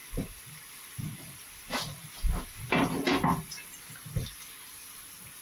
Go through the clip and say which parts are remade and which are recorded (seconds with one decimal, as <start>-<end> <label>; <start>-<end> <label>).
0.0-5.4 recorded